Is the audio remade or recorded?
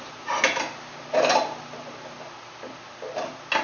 recorded